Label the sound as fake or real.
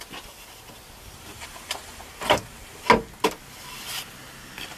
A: real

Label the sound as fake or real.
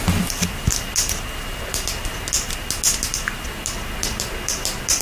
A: real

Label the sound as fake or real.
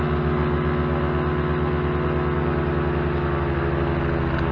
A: real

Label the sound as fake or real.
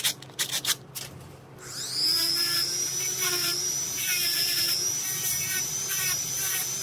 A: fake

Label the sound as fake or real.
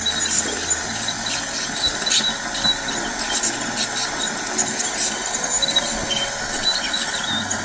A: real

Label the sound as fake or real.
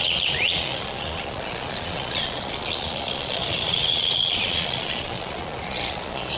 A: fake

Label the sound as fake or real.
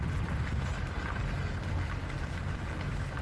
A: real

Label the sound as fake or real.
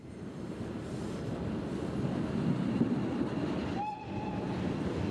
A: real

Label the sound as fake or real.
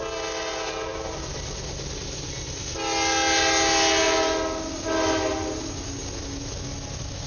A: real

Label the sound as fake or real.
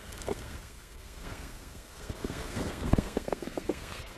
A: fake